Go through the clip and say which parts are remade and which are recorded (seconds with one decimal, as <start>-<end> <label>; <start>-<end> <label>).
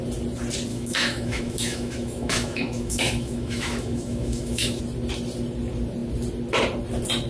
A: 0.0-0.7 recorded; 0.7-4.8 remade; 4.8-7.3 recorded